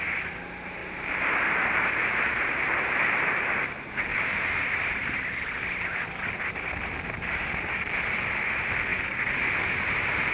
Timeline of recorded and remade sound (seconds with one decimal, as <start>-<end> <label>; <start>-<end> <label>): 0.0-0.8 recorded; 0.8-2.4 remade; 2.4-4.1 recorded; 4.1-5.3 remade; 5.3-8.9 recorded; 8.9-9.6 remade; 9.6-10.3 recorded

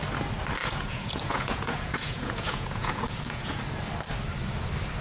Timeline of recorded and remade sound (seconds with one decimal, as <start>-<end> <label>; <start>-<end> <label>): 0.0-0.6 recorded; 0.6-3.6 remade; 3.6-5.0 recorded

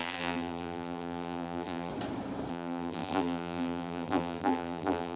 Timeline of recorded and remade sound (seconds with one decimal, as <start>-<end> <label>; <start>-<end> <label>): 0.0-1.9 remade; 1.9-2.5 recorded; 2.5-5.2 remade

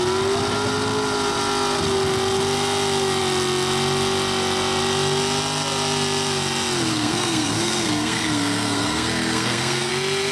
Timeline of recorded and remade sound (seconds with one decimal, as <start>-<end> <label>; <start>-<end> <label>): 0.0-6.9 recorded; 6.9-9.9 remade; 9.9-10.3 recorded

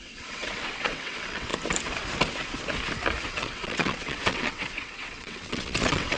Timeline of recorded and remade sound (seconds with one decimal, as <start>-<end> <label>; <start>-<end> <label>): 0.0-1.5 remade; 1.5-3.3 recorded; 3.3-6.2 remade